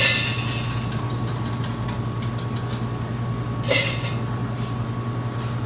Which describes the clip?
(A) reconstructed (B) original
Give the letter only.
B